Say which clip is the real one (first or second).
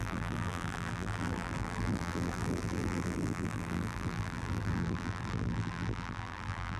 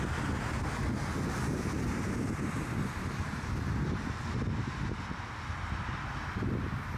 second